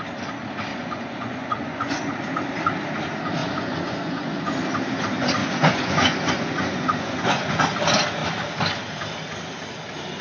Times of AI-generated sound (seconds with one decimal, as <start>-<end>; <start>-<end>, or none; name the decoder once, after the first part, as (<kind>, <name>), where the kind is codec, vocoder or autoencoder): 0.7-2.1 (vocoder, Vocos); 3.4-4.6; 5.4-7.6